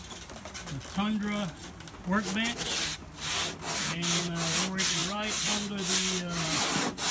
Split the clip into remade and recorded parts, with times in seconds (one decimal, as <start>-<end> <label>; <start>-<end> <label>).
0.0-7.1 recorded